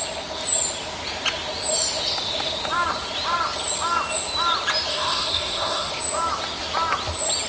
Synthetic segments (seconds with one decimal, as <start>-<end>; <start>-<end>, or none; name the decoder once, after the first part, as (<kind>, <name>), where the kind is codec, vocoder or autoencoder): 4.9-5.9 (codec, SNAC)